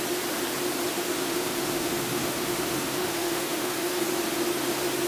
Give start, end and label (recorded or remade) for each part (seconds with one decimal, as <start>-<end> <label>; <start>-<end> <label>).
0.0-0.9 recorded; 0.9-4.0 remade; 4.0-5.1 recorded